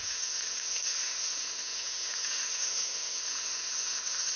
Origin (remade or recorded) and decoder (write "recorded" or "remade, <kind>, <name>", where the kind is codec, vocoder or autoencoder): remade, autoencoder, DAC-VAE